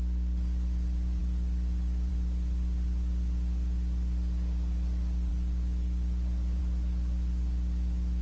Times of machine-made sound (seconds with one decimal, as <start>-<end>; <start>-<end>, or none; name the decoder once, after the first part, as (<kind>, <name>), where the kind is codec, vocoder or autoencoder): 1.2-2.1 (vocoder, BigVGAN v2); 5.3-6.6